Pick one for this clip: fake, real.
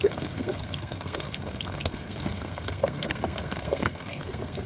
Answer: fake